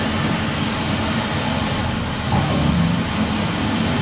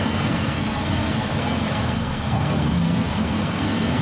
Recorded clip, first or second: first